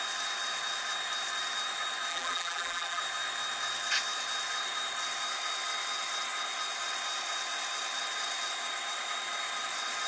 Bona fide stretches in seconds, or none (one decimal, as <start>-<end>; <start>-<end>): 0.0-2.1; 3.0-10.1